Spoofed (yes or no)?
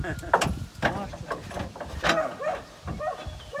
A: no